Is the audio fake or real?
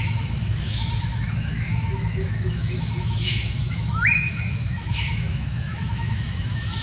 fake